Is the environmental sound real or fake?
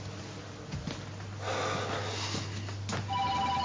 real